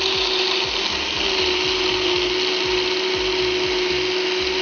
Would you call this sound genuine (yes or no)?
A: yes